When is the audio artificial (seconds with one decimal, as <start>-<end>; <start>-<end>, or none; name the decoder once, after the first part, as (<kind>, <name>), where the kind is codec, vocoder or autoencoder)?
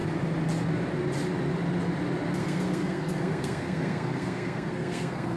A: 2.4-5.4 (codec, SNAC)